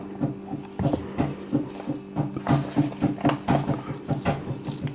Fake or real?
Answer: real